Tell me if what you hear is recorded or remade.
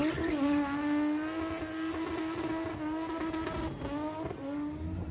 recorded